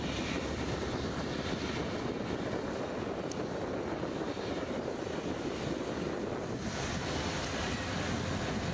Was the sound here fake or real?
real